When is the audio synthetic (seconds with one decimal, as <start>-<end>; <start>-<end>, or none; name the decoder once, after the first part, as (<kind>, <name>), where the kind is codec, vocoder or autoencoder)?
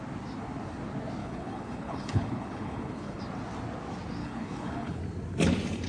1.2-3.2 (codec, HILCodec); 4.2-5.0